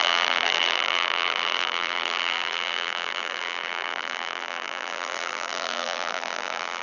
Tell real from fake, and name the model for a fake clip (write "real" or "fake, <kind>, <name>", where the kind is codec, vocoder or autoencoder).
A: fake, vocoder, BigVGAN v2